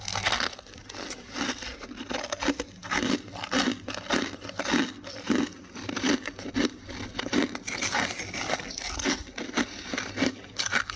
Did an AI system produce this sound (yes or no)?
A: no